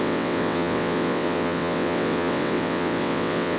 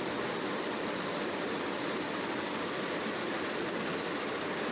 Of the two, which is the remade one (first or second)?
first